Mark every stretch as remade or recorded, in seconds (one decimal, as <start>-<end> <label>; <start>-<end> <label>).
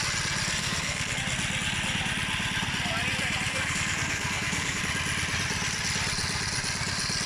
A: 0.0-0.6 recorded; 0.6-1.2 remade; 1.2-3.5 recorded; 3.5-4.8 remade; 4.8-7.3 recorded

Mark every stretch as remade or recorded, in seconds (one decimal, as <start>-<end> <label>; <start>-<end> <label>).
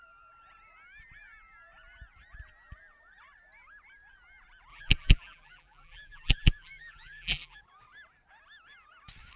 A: 0.0-4.7 recorded; 4.7-7.6 remade; 7.6-9.4 recorded